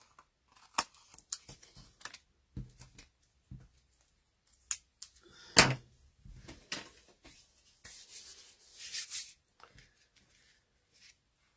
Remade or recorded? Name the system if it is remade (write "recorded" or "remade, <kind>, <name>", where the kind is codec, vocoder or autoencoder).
recorded